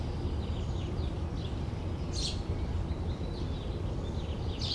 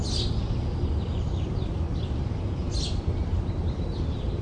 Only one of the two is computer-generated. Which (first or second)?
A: second